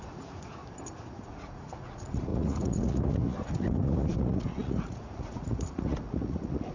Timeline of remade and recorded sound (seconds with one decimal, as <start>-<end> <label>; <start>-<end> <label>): 0.0-0.6 remade; 0.6-1.1 recorded; 1.1-6.7 remade